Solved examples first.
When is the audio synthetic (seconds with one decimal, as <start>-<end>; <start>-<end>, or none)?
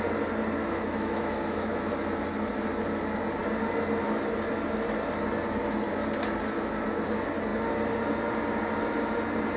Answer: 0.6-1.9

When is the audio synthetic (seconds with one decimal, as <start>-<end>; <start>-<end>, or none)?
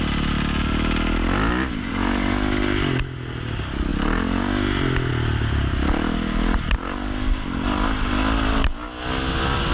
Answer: none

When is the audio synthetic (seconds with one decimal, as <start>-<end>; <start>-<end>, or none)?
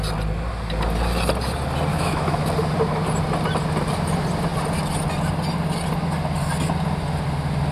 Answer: 1.9-2.4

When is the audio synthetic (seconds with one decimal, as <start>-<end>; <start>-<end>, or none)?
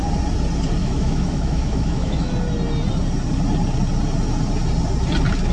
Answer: 0.8-2.3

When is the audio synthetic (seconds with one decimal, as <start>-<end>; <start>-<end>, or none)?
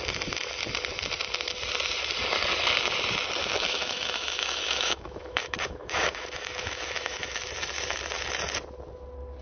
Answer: 3.4-7.5